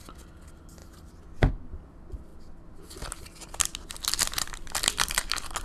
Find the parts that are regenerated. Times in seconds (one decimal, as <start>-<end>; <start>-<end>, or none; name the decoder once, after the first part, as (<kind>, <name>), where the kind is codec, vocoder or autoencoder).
none